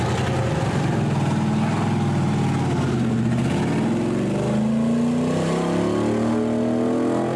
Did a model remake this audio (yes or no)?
no